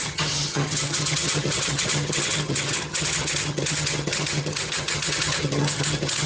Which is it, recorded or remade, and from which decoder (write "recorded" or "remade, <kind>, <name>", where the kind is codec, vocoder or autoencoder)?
remade, vocoder, HiFi-GAN